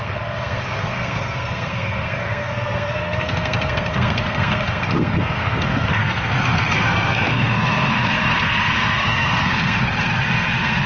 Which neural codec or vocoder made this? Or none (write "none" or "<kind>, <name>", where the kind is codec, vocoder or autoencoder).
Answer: codec, SNAC